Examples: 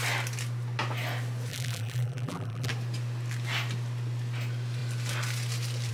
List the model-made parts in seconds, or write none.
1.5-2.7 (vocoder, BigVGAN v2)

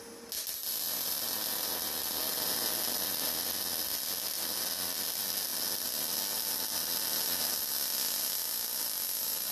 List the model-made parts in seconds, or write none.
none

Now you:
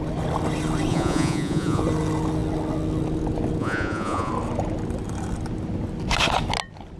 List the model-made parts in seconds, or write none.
0.9-1.8 (vocoder, Vocos); 3.6-4.3

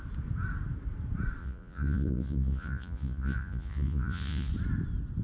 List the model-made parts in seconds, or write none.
1.4-4.5 (vocoder, Vocos)